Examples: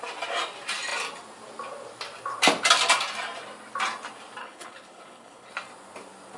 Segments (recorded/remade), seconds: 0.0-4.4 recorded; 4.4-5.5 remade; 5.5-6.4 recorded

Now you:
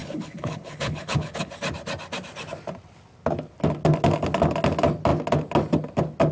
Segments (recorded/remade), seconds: 0.0-1.5 remade; 1.5-6.3 recorded

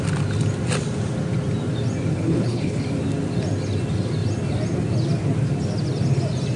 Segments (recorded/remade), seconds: 0.0-2.1 recorded; 2.1-2.8 remade; 2.8-6.6 recorded

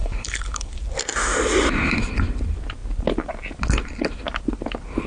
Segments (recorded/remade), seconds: 0.0-0.7 remade; 0.7-5.1 recorded

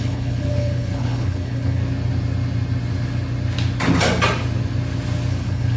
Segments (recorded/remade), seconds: 0.0-1.8 remade; 1.8-5.3 recorded; 5.3-5.8 remade

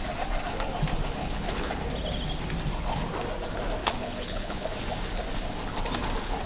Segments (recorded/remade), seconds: 0.0-1.2 recorded; 1.2-1.7 remade; 1.7-3.8 recorded; 3.8-4.7 remade; 4.7-6.5 recorded